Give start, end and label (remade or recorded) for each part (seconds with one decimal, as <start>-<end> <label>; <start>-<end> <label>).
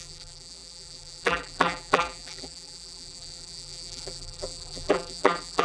0.0-5.6 remade